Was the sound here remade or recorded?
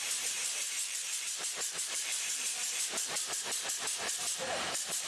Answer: remade